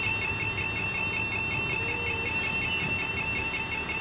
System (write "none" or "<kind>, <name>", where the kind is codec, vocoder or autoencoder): none